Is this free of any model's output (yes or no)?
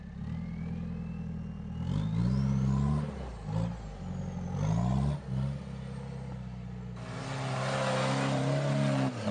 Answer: yes